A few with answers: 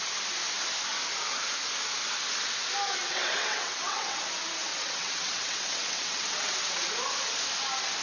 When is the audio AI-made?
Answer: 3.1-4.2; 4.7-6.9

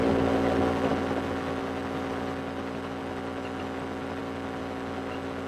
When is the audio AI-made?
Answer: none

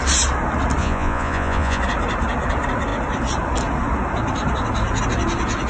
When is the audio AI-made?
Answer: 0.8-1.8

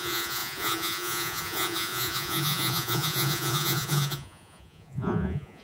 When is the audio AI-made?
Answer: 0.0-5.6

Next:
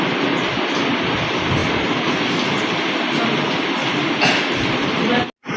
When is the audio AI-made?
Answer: none

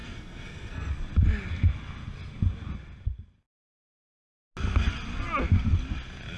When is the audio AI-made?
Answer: 0.0-0.9